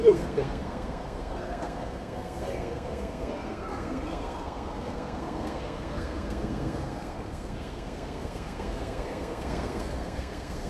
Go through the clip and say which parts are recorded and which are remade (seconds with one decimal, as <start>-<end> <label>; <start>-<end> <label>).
0.0-10.7 remade